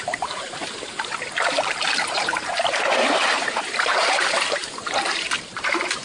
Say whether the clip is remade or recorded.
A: remade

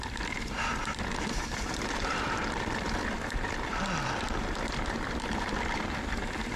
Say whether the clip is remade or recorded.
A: remade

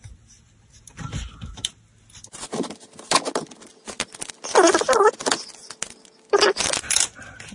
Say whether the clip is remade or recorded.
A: recorded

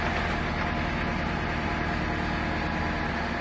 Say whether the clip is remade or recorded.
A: recorded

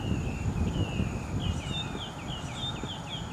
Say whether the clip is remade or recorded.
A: recorded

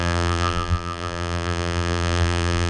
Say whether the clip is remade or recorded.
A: remade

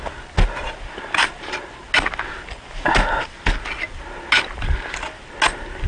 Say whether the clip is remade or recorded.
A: recorded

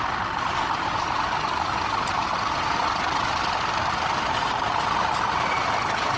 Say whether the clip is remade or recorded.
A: remade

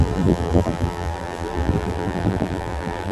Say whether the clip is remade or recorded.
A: remade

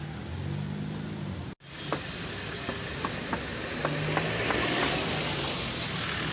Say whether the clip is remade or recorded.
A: recorded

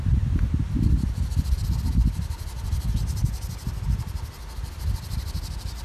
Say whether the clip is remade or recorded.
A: recorded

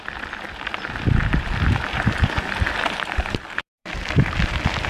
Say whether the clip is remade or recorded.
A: remade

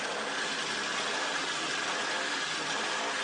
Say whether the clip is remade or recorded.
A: recorded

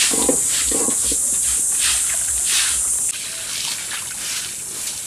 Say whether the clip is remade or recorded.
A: recorded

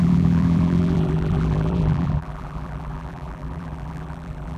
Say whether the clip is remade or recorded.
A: remade